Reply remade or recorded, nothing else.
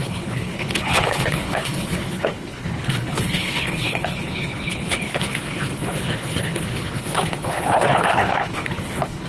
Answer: remade